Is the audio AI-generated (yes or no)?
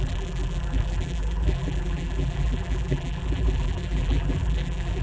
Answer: yes